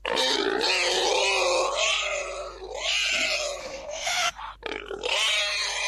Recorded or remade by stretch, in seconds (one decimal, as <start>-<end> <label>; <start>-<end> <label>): 0.0-3.6 recorded; 3.6-4.3 remade; 4.3-5.9 recorded